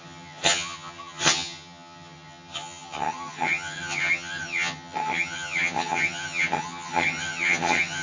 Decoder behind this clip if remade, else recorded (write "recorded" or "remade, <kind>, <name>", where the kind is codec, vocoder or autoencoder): remade, vocoder, HiFi-GAN